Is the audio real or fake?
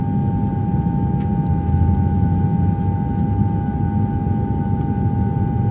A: real